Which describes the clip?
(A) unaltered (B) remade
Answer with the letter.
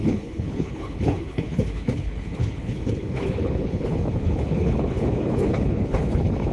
B